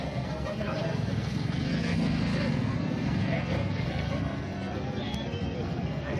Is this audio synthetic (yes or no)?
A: yes